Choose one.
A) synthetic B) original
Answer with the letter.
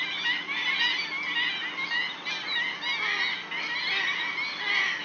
B